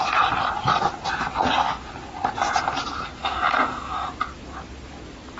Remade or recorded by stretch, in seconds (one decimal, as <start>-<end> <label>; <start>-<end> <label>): 0.0-3.2 recorded; 3.2-4.1 remade; 4.1-5.4 recorded